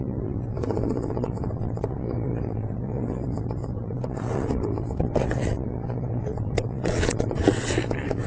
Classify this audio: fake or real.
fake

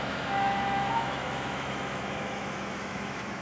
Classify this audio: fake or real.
fake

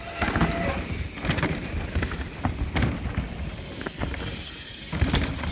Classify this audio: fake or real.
real